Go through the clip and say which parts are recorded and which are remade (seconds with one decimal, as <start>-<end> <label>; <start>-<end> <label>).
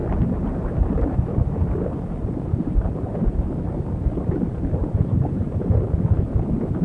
0.0-1.2 remade; 1.2-2.2 recorded; 2.2-3.5 remade; 3.5-4.8 recorded; 4.8-5.6 remade; 5.6-6.8 recorded